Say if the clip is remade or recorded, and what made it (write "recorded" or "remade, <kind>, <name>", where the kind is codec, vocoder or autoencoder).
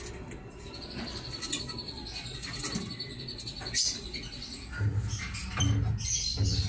recorded